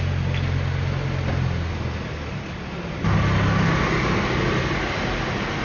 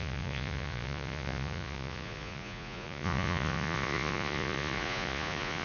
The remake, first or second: second